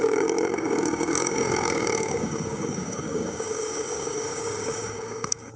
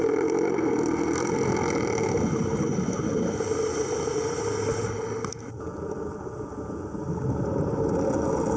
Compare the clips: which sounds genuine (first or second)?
second